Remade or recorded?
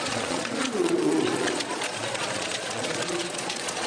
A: remade